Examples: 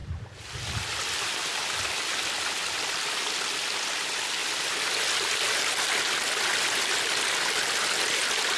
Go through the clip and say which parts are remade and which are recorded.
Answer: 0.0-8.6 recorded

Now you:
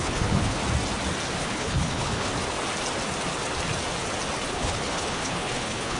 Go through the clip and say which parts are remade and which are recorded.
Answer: 0.0-0.6 remade; 0.6-1.4 recorded; 1.4-2.3 remade; 2.3-4.5 recorded; 4.5-6.0 remade

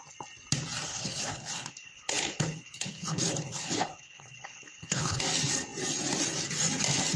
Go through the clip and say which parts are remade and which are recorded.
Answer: 0.0-0.9 recorded; 0.9-5.2 remade; 5.2-7.2 recorded

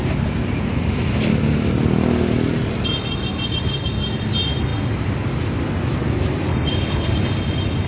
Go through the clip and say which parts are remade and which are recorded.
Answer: 0.0-6.5 recorded; 6.5-7.1 remade; 7.1-7.9 recorded

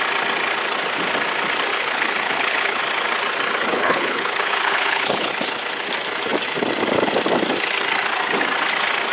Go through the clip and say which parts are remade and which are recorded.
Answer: 0.0-1.7 recorded; 1.7-2.8 remade; 2.8-3.7 recorded; 3.7-5.3 remade; 5.3-9.1 recorded